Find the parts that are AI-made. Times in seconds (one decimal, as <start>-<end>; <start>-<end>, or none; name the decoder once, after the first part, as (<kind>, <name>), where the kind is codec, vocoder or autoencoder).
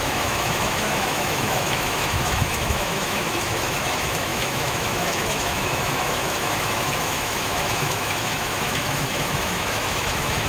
0.0-10.5 (autoencoder, DAC-VAE)